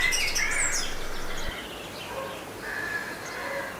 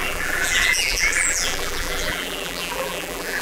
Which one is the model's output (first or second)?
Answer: second